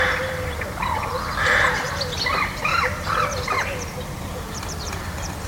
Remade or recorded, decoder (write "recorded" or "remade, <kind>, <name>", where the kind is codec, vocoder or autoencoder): recorded